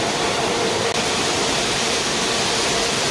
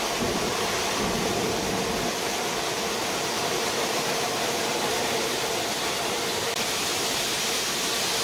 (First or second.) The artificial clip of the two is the second